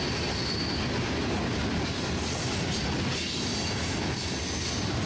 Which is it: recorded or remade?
recorded